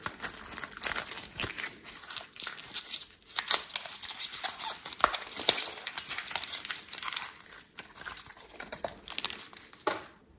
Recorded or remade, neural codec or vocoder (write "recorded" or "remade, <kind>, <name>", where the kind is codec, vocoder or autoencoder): recorded